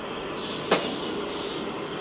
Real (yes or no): yes